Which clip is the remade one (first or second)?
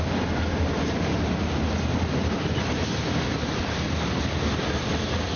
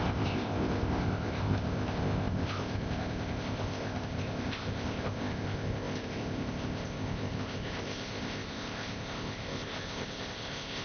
second